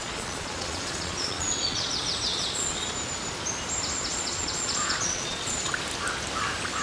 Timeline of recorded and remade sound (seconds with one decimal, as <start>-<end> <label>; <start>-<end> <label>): 0.0-1.9 remade; 1.9-2.3 recorded; 2.3-2.9 remade; 2.9-4.1 recorded; 4.1-5.7 remade; 5.7-6.8 recorded